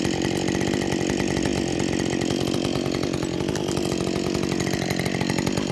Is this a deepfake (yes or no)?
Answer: no